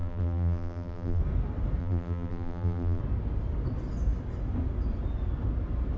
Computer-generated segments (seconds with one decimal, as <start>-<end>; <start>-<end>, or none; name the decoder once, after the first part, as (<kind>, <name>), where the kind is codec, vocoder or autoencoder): 0.0-1.2 (vocoder, BigVGAN v2); 1.8-3.0